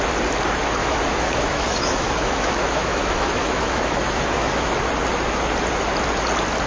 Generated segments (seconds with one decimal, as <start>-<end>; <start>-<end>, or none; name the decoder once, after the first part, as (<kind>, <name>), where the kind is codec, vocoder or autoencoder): 0.8-4.8 (autoencoder, DAC-VAE)